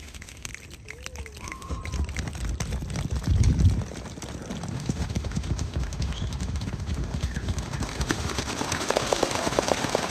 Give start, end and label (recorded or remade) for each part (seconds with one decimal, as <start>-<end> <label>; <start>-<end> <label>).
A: 0.0-0.5 remade; 0.5-1.4 recorded; 1.4-1.8 remade; 1.8-4.7 recorded; 4.7-10.1 remade